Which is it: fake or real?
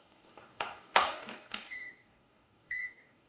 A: fake